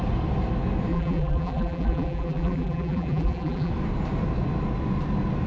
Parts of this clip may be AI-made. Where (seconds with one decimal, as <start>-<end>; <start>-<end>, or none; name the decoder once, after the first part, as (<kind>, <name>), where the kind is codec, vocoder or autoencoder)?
0.9-3.7 (vocoder, BigVGAN v2)